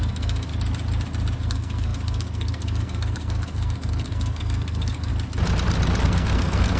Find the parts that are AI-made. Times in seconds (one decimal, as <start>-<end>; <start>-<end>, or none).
0.0-0.5; 1.4-5.1; 6.0-6.8